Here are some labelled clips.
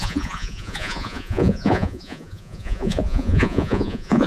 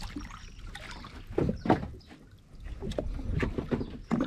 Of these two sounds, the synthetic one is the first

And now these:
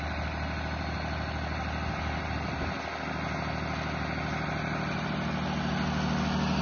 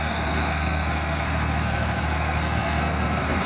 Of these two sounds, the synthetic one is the second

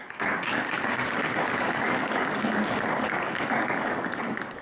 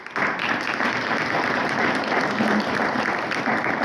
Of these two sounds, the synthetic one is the first